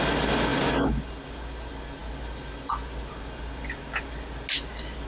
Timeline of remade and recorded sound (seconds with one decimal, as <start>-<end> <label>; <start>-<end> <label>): 0.0-5.1 recorded

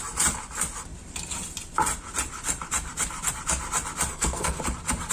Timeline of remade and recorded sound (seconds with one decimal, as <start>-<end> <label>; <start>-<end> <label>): 0.0-4.1 recorded; 4.1-4.6 remade; 4.6-5.1 recorded

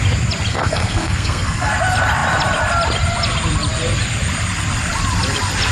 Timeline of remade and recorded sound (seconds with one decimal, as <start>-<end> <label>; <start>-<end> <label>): 0.0-0.5 recorded; 0.5-1.7 remade; 1.7-5.7 recorded

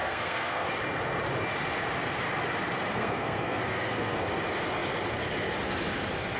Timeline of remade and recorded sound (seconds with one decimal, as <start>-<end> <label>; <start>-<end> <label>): 0.0-0.7 remade; 0.7-2.9 recorded; 2.9-4.2 remade; 4.2-6.4 recorded

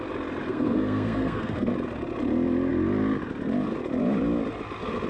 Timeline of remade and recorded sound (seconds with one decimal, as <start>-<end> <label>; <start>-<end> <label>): 0.0-0.5 recorded; 0.5-1.7 remade; 1.7-5.1 recorded

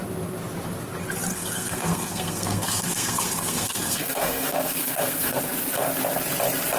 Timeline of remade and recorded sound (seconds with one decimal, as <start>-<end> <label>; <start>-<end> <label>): 0.0-1.3 recorded; 1.3-5.4 remade; 5.4-6.8 recorded

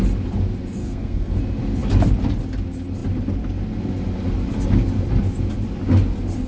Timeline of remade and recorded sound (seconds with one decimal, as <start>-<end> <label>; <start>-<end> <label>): 0.0-0.8 recorded; 0.8-1.4 remade; 1.4-6.5 recorded

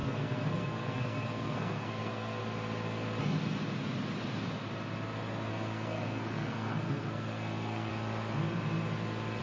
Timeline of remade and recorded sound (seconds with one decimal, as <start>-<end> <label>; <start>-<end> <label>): 0.0-2.4 remade; 2.4-5.5 recorded; 5.5-7.9 remade; 7.9-9.4 recorded